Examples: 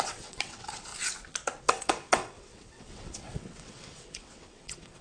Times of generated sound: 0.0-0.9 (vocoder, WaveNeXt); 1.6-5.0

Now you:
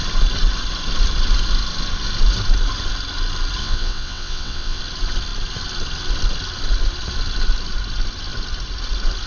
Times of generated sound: 3.6-4.8 (vocoder, WaveNeXt)

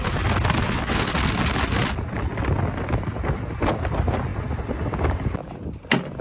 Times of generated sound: 0.6-1.1 (vocoder, WaveNeXt)

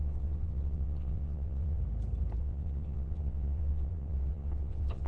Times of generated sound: 0.0-1.8 (vocoder, WaveNeXt); 2.4-5.1

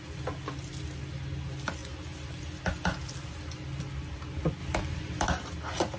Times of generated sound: none

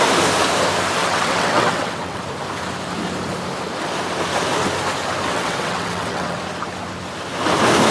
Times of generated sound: 1.0-2.2 (vocoder, WaveNeXt); 5.3-6.4

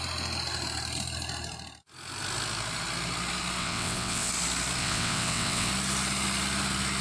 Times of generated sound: 3.6-4.3 (vocoder, WaveNeXt); 4.8-5.7

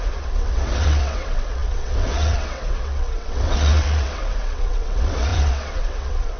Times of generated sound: 0.0-6.4 (vocoder, WaveNeXt)